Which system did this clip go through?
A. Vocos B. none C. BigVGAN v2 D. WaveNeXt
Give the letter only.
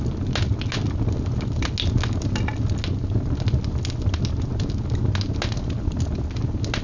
B